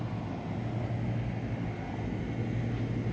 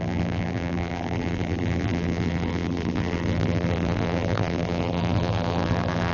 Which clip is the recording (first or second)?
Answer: first